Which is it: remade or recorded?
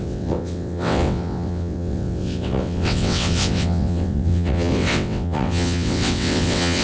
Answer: remade